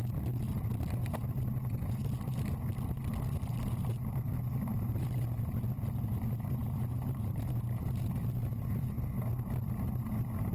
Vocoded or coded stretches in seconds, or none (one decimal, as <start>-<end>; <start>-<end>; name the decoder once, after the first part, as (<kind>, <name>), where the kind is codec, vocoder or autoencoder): 6.6-8.0 (vocoder, BigVGAN v2); 8.4-8.9